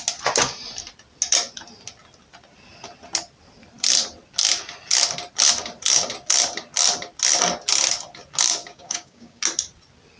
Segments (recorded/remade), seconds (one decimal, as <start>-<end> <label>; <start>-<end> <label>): 0.0-8.6 recorded; 8.6-9.4 remade; 9.4-10.2 recorded